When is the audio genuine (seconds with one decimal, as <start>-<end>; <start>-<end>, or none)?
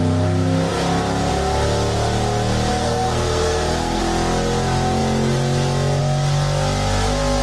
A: 0.0-2.7; 4.0-7.4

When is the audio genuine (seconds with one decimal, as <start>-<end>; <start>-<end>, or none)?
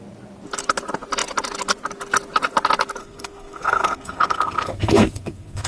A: 0.0-3.0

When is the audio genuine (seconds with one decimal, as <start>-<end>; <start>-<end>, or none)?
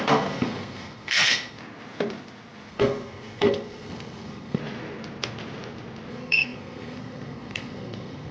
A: 1.6-2.7; 4.6-6.1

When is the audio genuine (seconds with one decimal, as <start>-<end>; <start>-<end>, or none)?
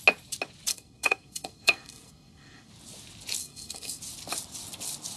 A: 0.0-0.7; 2.7-3.4; 4.0-5.2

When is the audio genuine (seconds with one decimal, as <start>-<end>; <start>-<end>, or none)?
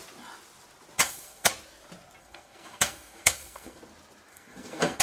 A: 0.0-1.0; 1.5-2.2; 3.8-4.3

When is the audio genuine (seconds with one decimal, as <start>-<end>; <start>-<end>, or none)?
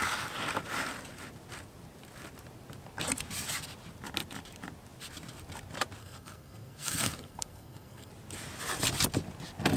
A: 0.0-6.0; 8.1-9.8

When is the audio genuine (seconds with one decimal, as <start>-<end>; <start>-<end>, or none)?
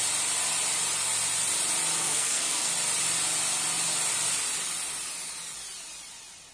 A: 0.0-2.0; 2.7-6.5